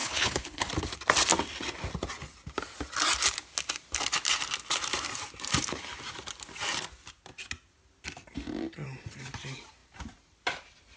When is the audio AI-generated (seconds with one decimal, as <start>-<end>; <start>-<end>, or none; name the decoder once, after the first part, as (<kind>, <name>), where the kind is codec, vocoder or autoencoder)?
0.0-0.7 (codec, HILCodec)